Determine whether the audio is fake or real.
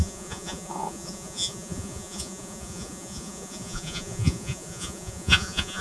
fake